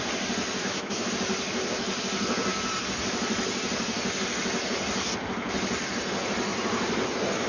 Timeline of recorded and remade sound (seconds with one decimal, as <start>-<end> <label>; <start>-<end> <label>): 0.0-0.6 recorded; 0.6-1.1 remade; 1.1-7.5 recorded

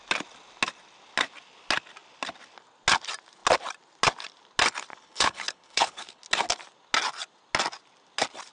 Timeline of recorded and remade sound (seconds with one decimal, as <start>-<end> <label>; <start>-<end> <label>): 0.0-4.9 recorded; 4.9-6.2 remade; 6.2-8.5 recorded

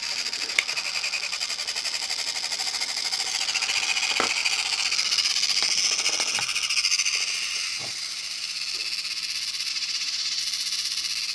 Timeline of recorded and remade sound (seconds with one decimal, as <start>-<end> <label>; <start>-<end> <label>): 0.0-9.7 recorded; 9.7-10.4 remade; 10.4-11.3 recorded

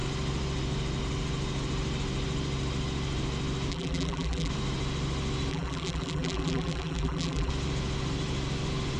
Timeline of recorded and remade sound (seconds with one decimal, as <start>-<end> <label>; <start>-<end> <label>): 0.0-3.7 recorded; 3.7-4.5 remade; 4.5-5.5 recorded; 5.5-7.5 remade; 7.5-9.0 recorded

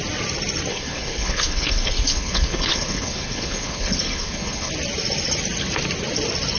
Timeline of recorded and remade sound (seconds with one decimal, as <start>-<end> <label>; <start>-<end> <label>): 0.0-0.7 recorded; 0.7-4.7 remade; 4.7-6.6 recorded

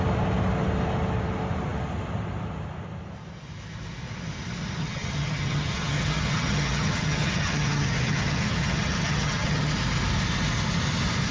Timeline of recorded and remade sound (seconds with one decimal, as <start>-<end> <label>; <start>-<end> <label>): 0.0-4.8 recorded; 4.8-9.7 remade; 9.7-11.3 recorded